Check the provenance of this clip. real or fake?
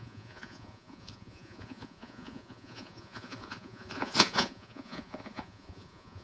fake